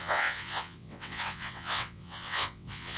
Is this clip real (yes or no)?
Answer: no